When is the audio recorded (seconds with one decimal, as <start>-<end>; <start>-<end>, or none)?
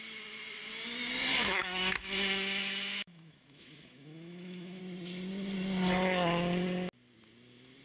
0.0-1.3; 4.8-7.8